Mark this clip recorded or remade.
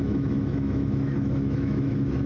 remade